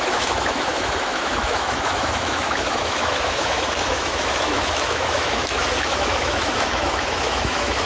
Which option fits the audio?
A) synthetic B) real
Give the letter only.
A